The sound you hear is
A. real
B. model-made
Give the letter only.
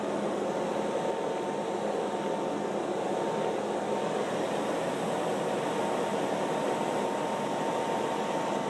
A